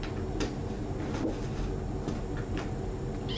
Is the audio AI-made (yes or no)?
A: no